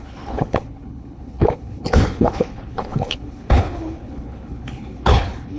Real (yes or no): no